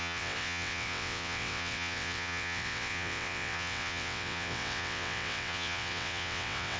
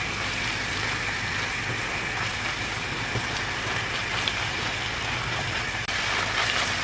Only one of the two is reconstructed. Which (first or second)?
first